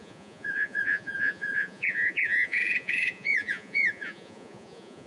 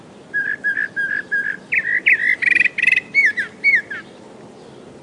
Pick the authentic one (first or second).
second